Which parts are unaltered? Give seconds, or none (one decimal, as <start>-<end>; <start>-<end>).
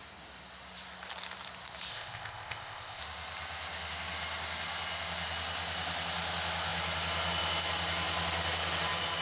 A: 0.0-1.9; 3.0-9.2